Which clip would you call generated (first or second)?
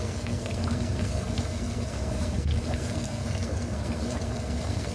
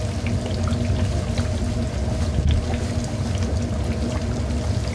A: first